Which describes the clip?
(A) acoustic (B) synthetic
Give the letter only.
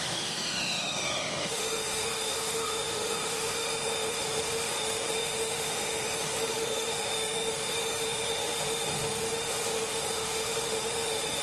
B